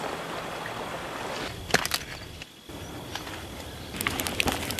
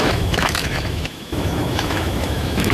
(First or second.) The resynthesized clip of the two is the second